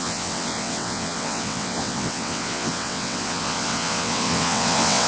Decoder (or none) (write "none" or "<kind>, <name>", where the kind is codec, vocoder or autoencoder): vocoder, WaveNeXt